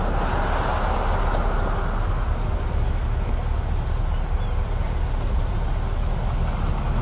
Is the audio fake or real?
real